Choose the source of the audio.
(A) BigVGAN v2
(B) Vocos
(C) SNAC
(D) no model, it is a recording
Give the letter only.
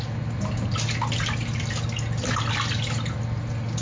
D